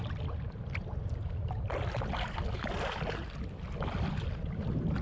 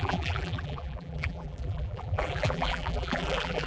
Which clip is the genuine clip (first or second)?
first